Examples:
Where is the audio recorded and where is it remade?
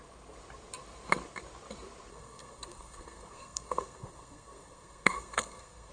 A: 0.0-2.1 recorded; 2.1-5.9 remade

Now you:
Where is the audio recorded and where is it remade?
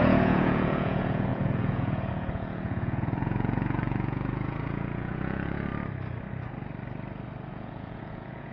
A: 0.0-5.7 remade; 5.7-7.5 recorded; 7.5-8.5 remade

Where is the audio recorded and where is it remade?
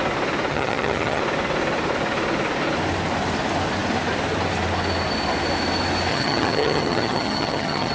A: 0.0-0.5 recorded; 0.5-1.2 remade; 1.2-6.1 recorded; 6.1-7.9 remade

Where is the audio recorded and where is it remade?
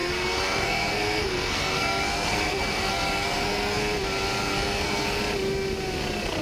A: 0.0-3.8 remade; 3.8-4.4 recorded; 4.4-5.2 remade; 5.2-6.4 recorded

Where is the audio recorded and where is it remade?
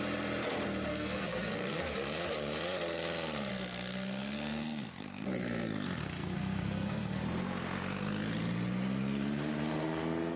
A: 0.0-0.9 recorded; 0.9-1.8 remade; 1.8-3.5 recorded; 3.5-7.2 remade; 7.2-10.4 recorded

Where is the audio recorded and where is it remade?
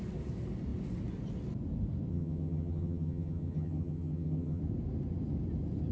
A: 0.0-2.1 recorded; 2.1-4.6 remade; 4.6-5.9 recorded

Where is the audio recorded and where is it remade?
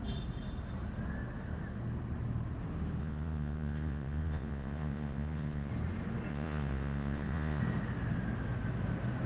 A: 0.0-3.0 recorded; 3.0-5.7 remade; 5.7-6.3 recorded; 6.3-7.6 remade; 7.6-9.3 recorded